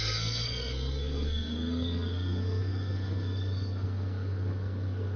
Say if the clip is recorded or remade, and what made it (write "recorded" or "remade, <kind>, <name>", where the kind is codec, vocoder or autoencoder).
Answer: remade, codec, SNAC